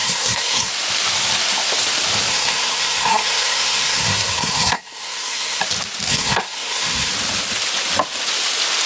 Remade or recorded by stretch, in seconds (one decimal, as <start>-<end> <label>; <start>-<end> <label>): 0.0-0.7 remade; 0.7-2.3 recorded; 2.3-5.6 remade; 5.6-6.1 recorded; 6.1-7.1 remade; 7.1-8.9 recorded